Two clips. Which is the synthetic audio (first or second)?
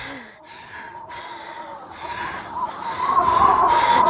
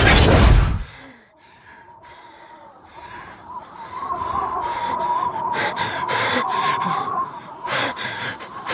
second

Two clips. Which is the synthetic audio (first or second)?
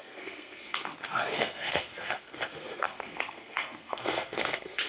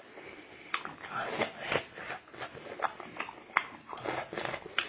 first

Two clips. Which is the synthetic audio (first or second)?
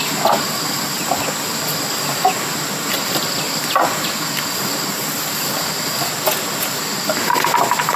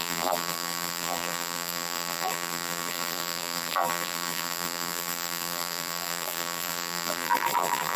second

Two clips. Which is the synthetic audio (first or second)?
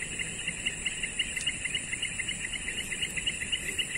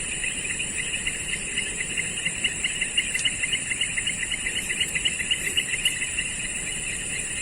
second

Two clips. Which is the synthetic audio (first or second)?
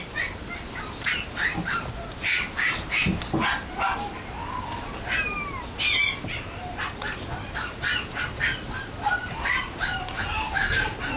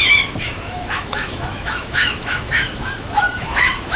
second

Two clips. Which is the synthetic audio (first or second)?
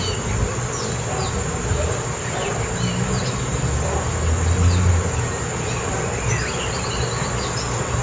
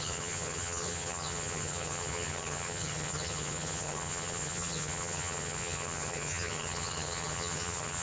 second